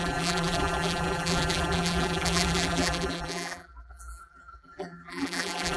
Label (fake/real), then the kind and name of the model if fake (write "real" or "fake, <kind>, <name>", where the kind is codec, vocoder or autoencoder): fake, vocoder, BigVGAN v2